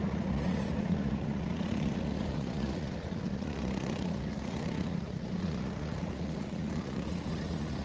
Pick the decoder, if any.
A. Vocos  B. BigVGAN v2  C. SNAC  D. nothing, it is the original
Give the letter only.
A